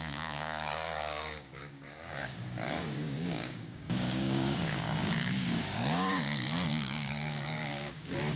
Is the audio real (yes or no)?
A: no